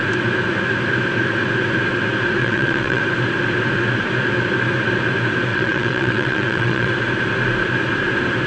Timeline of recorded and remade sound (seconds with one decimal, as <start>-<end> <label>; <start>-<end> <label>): 0.0-2.4 recorded; 2.4-3.0 remade; 3.0-5.5 recorded; 5.5-6.9 remade; 6.9-8.5 recorded